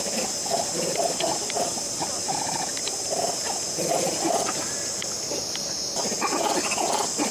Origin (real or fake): real